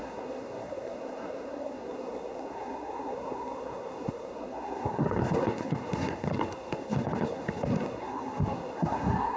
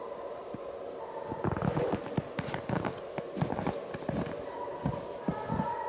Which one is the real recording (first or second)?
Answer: second